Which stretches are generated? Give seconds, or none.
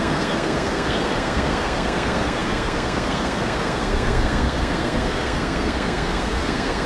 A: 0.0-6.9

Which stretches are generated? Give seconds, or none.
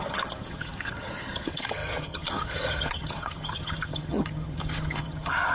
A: 0.0-5.5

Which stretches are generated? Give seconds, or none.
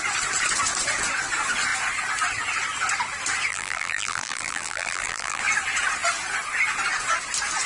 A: 3.5-5.4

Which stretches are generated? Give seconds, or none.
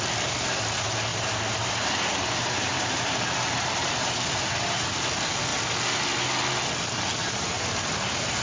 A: 1.1-4.9; 7.2-7.7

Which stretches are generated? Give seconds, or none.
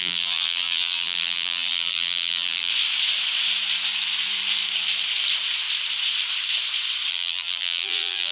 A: 0.0-2.7; 7.1-8.3